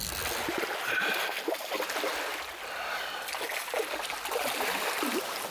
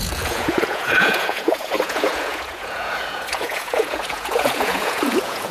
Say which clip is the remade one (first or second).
second